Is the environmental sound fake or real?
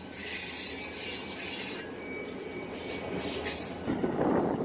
real